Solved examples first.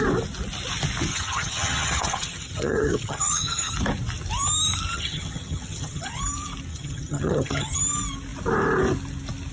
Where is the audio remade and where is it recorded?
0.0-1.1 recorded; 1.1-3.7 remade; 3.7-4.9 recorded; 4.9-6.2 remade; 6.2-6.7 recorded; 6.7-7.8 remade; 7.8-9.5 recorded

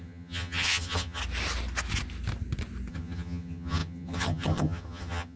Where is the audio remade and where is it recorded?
0.0-1.2 remade; 1.2-2.9 recorded; 2.9-5.4 remade

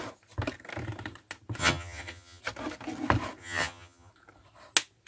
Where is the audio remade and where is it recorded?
0.0-1.6 recorded; 1.6-2.4 remade; 2.4-3.4 recorded; 3.4-4.1 remade; 4.1-5.1 recorded

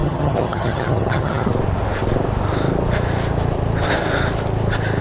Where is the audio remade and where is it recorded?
0.0-1.5 remade; 1.5-5.0 recorded

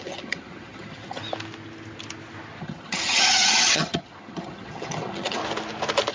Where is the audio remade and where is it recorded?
0.0-1.2 remade; 1.2-2.6 recorded; 2.6-5.4 remade; 5.4-6.1 recorded

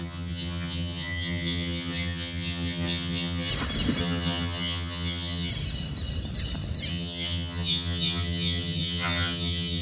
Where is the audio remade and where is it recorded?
0.0-3.5 remade; 3.5-4.0 recorded; 4.0-5.5 remade; 5.5-6.9 recorded; 6.9-9.8 remade

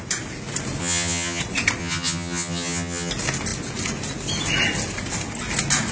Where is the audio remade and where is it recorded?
0.0-0.8 recorded; 0.8-1.4 remade; 1.4-1.8 recorded; 1.8-3.1 remade; 3.1-5.9 recorded

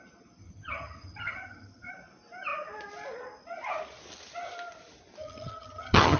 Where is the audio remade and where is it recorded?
0.0-0.4 recorded; 0.4-1.9 remade; 1.9-5.2 recorded; 5.2-6.2 remade